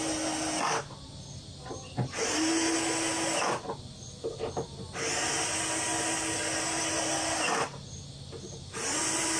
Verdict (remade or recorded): recorded